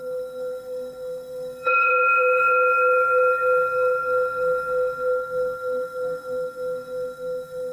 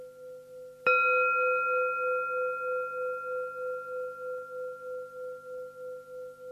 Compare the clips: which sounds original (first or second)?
second